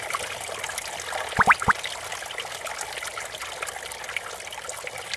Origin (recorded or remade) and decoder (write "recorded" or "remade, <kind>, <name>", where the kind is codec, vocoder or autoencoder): recorded